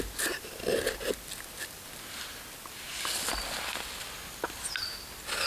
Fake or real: real